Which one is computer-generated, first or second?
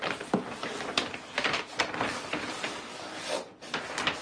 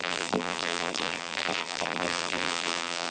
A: second